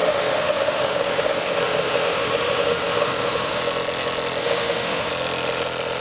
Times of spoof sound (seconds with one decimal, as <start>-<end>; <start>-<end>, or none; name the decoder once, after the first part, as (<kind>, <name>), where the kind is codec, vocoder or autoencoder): 0.0-3.6 (autoencoder, DAC-VAE); 4.4-5.1